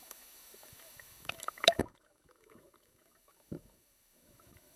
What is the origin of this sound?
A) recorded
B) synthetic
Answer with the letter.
B